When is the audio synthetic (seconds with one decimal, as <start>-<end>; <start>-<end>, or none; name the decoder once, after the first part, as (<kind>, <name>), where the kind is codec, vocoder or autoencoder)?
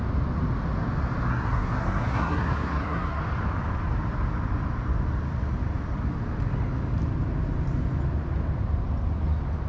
1.3-3.2 (codec, SNAC)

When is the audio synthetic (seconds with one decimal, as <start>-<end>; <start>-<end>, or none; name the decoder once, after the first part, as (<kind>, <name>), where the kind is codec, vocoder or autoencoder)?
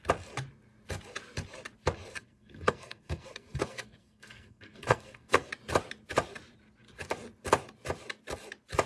2.1-5.5 (codec, SNAC)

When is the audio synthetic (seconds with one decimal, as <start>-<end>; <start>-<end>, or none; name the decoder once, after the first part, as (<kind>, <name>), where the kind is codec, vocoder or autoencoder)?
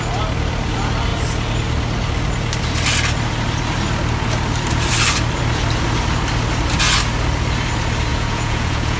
8.1-9.0 (vocoder, Vocos)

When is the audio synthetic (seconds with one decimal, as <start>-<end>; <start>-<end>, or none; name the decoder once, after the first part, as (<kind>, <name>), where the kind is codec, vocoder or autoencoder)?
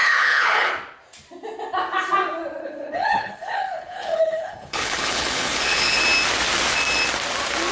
0.0-0.7 (codec, HILCodec); 2.6-6.0